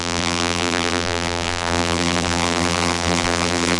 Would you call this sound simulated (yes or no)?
yes